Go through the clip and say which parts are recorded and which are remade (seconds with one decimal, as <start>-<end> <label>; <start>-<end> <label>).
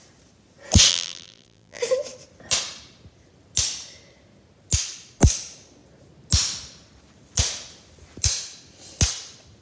0.0-0.9 recorded; 0.9-1.8 remade; 1.8-9.6 recorded